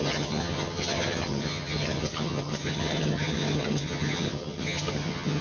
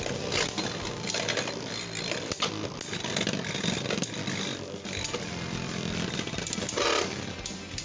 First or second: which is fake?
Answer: first